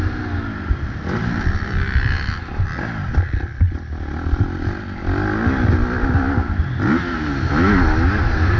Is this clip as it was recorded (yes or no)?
yes